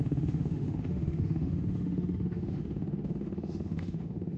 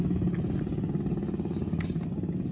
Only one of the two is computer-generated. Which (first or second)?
first